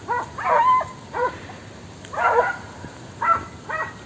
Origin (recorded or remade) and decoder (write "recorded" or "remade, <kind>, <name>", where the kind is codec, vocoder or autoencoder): recorded